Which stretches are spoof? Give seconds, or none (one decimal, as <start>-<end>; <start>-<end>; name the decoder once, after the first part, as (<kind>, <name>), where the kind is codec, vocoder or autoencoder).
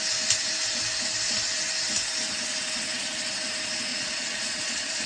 3.9-5.1 (vocoder, Vocos)